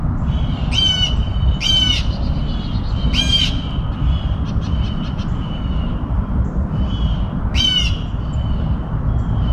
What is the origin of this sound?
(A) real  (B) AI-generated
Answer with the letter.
A